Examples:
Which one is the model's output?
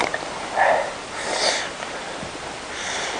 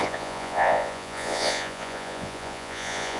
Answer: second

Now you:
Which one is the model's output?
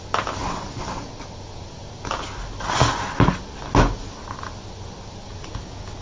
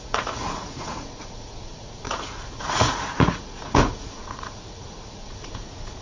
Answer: second